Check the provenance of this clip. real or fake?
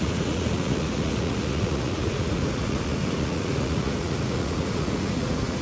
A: fake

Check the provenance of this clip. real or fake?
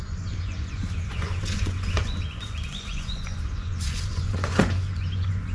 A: fake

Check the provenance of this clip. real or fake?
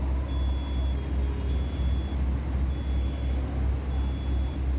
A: real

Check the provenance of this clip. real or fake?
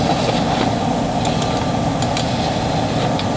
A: real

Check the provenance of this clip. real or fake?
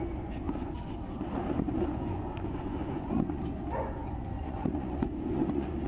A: fake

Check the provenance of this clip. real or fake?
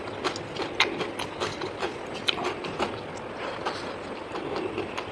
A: real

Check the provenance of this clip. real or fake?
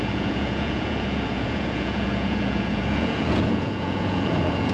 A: fake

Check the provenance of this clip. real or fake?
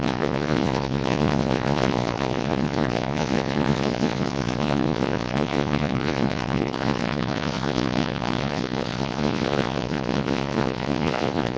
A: fake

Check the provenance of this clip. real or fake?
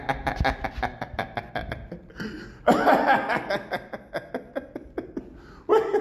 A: real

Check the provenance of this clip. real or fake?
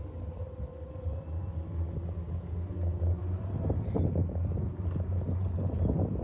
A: real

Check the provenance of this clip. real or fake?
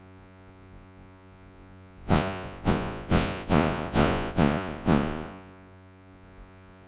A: fake